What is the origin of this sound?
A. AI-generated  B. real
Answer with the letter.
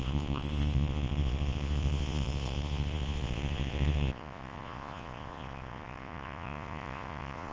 A